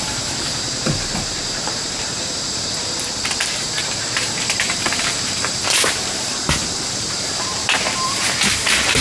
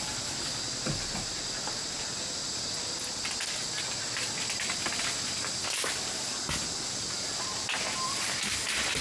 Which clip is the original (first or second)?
second